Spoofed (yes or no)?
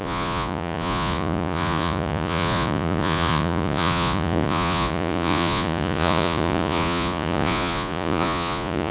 yes